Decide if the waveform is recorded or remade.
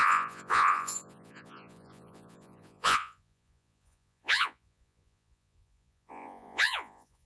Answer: remade